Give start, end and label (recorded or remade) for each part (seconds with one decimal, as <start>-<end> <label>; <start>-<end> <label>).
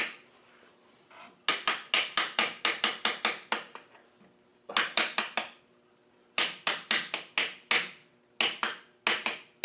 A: 0.0-9.6 recorded